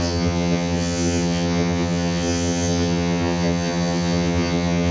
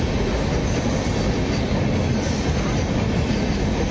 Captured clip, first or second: second